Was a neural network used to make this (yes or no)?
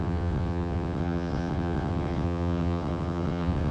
yes